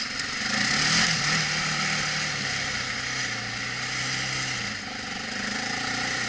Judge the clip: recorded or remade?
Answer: recorded